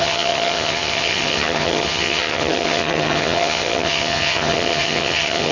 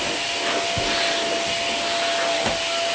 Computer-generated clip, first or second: first